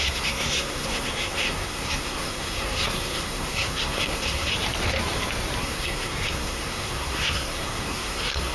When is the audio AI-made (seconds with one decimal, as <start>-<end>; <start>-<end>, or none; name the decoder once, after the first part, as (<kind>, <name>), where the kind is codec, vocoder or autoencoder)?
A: 0.0-4.5 (codec, SNAC); 5.6-8.5